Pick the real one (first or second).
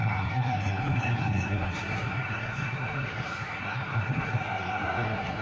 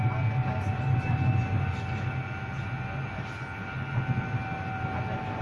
second